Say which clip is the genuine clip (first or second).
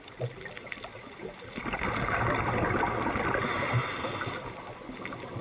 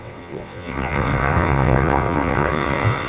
first